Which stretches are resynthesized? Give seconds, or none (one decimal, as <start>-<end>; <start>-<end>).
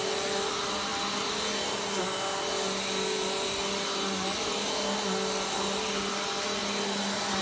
none